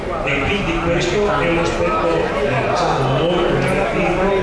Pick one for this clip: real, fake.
real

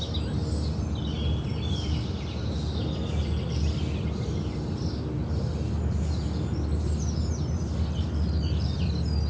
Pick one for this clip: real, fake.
real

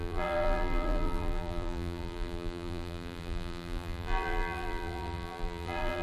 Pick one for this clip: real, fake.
fake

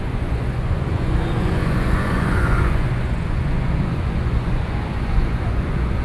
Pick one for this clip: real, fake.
fake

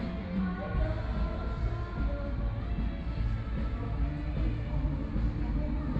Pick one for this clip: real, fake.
real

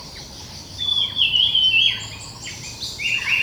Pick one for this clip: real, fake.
real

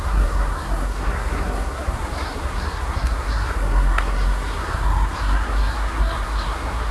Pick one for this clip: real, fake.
fake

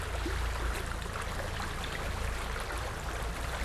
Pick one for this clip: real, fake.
real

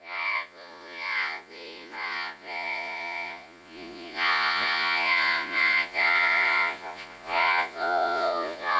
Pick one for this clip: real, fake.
fake